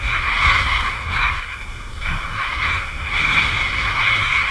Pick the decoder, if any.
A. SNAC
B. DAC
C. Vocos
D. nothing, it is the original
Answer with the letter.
A